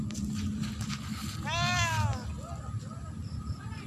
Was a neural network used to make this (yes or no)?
no